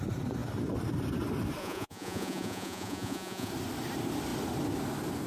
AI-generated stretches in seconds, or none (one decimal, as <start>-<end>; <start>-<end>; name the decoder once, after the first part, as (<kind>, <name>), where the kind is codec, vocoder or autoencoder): 1.6-3.5 (vocoder, Vocos)